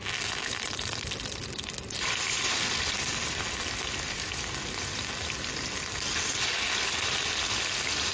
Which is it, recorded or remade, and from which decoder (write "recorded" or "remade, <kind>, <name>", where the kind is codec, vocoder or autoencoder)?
recorded